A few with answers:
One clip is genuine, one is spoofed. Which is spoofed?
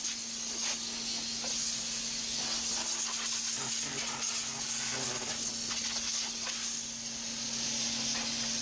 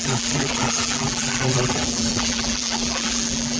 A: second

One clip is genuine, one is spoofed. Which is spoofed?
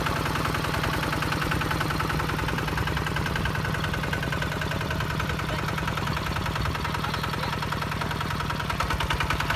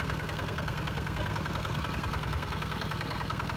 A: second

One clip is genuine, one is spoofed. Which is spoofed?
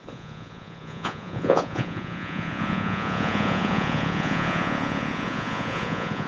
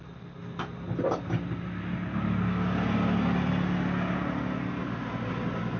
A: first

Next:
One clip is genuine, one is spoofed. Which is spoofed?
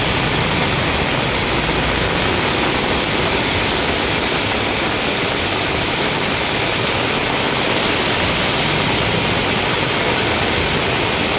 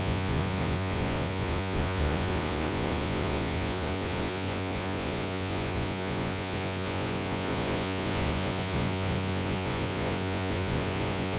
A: second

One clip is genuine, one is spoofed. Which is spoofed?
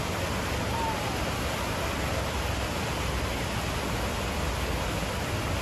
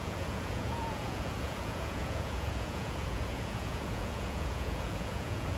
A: second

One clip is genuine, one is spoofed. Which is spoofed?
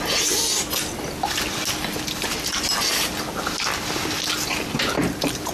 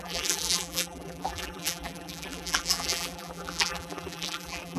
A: second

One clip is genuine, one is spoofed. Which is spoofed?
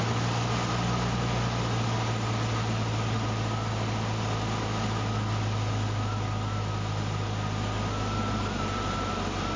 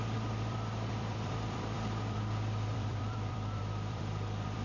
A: second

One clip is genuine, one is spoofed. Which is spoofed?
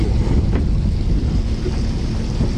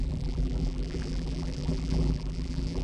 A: second